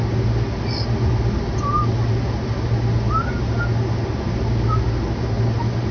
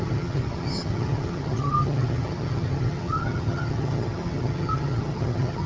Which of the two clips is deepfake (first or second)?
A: second